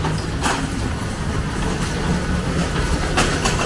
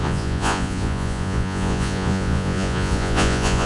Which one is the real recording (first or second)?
first